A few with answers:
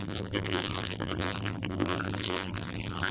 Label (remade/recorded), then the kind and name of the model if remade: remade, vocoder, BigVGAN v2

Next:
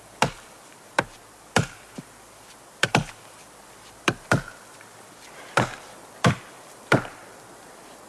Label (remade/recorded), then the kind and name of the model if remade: remade, vocoder, BigVGAN v2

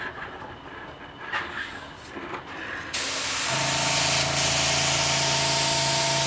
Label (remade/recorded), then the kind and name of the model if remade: recorded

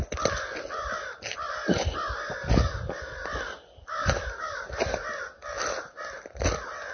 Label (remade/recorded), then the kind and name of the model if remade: recorded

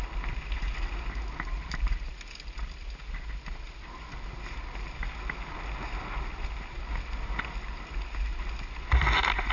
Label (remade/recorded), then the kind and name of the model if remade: recorded